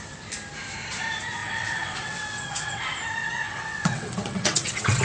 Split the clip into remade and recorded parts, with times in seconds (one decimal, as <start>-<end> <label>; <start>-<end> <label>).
0.0-1.4 recorded; 1.4-2.8 remade; 2.8-3.2 recorded; 3.2-5.0 remade